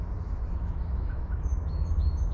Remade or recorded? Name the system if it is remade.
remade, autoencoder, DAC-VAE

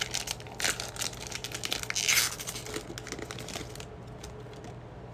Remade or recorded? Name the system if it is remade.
recorded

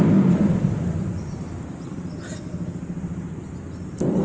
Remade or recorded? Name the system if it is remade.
recorded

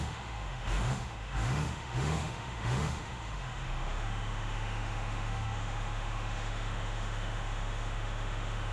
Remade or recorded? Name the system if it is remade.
remade, autoencoder, DAC-VAE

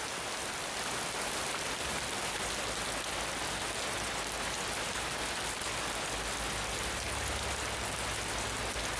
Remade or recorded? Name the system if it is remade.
recorded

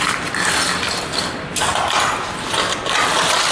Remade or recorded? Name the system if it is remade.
recorded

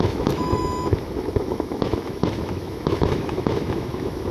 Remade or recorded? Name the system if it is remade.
remade, autoencoder, DAC-VAE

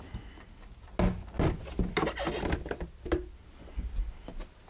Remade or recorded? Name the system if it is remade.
recorded